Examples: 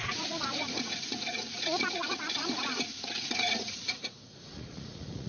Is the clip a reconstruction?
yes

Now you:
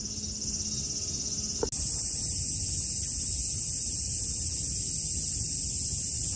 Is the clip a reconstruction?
no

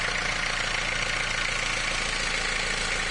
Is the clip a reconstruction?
no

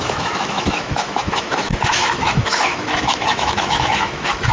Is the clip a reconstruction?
yes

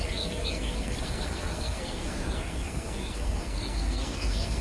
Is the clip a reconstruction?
yes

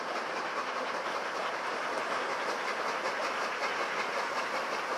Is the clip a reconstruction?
no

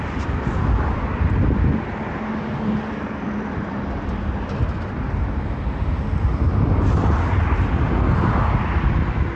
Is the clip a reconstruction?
no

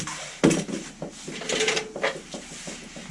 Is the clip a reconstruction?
no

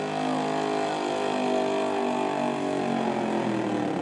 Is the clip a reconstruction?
no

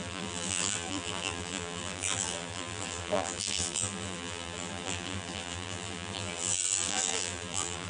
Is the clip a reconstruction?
yes